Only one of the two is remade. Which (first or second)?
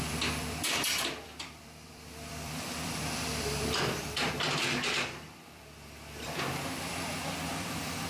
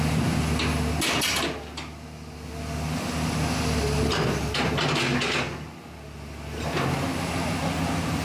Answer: first